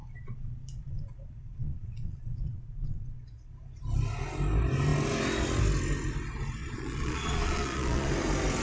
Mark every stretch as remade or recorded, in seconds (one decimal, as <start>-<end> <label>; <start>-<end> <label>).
0.0-3.5 remade; 3.5-6.6 recorded; 6.6-8.1 remade; 8.1-8.6 recorded